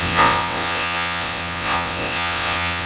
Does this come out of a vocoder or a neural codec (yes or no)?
yes